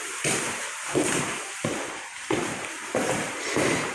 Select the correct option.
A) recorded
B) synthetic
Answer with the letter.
B